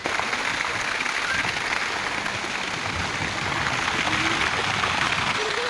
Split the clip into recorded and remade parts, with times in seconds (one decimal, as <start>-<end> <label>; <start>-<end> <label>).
0.0-4.6 recorded; 4.6-5.1 remade; 5.1-5.7 recorded